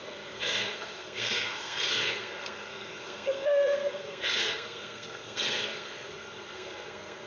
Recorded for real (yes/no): no